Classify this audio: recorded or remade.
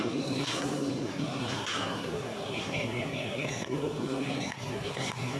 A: remade